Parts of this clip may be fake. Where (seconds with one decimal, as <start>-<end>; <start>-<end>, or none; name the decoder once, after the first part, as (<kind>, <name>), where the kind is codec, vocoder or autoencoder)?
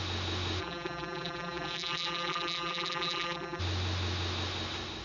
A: 0.6-3.6 (vocoder, BigVGAN v2)